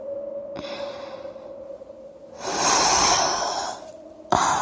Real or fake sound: real